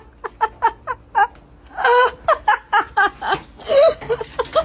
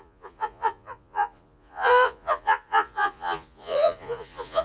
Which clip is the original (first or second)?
first